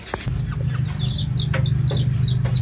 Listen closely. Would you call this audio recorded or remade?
recorded